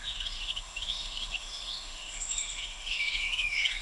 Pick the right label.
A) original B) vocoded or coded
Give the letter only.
B